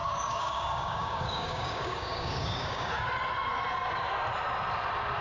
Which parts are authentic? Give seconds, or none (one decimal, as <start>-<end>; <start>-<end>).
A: 3.1-5.2